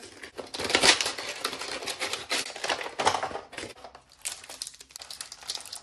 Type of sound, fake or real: real